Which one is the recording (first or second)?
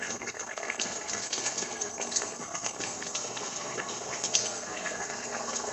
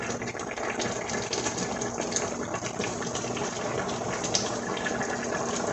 second